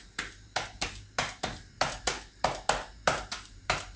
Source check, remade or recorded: remade